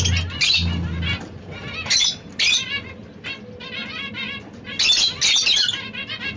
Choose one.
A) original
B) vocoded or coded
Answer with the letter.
A